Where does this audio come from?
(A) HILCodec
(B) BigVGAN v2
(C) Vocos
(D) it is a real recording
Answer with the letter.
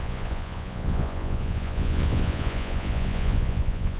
C